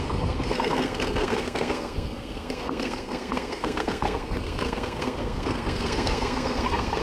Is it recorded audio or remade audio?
remade